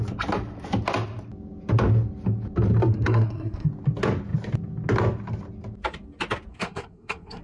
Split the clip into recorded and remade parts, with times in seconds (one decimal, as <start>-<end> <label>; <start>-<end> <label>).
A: 0.0-2.9 recorded; 2.9-3.7 remade; 3.7-6.5 recorded; 6.5-7.4 remade